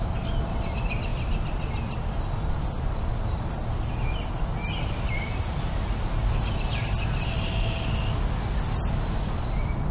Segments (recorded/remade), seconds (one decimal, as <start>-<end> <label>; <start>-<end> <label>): 0.0-9.9 recorded